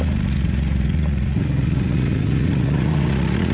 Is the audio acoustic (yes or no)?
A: no